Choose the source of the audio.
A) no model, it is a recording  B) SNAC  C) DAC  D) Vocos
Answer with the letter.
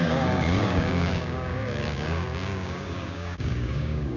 C